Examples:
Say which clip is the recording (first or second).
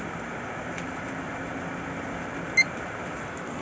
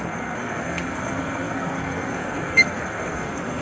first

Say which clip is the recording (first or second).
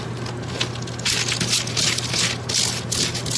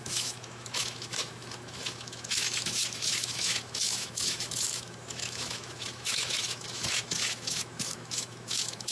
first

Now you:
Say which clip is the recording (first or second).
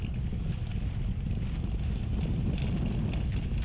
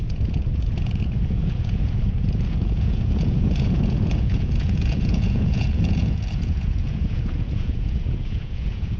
first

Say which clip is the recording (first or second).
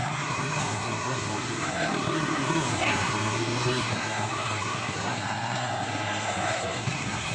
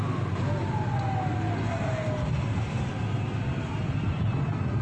second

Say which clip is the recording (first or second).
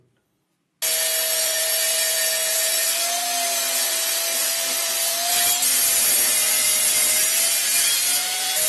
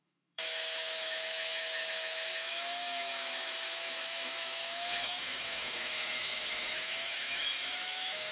first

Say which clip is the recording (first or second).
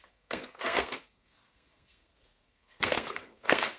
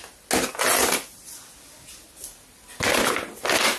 second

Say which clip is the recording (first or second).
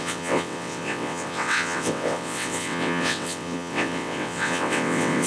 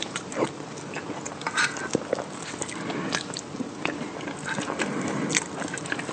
second